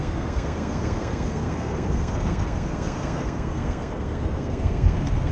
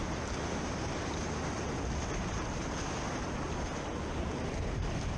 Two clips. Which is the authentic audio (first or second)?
second